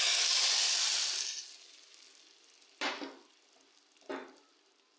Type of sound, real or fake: real